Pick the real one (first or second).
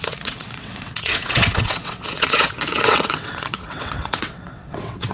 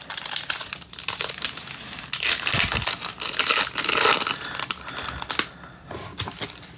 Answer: second